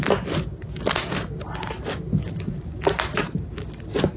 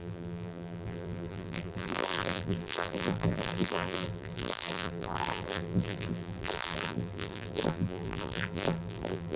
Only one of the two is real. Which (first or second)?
first